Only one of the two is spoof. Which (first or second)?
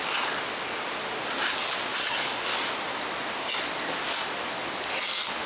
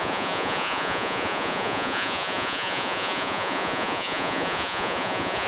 second